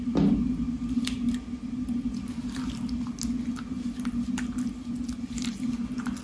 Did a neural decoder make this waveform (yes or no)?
no